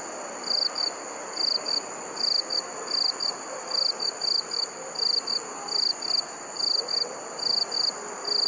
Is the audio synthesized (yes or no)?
no